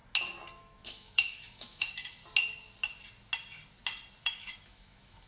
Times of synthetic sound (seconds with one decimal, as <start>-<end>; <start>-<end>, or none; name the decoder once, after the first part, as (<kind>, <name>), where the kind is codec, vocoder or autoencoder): 0.6-2.2 (autoencoder, DAC-VAE); 4.2-5.3